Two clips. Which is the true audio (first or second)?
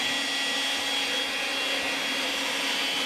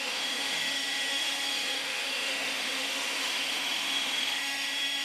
first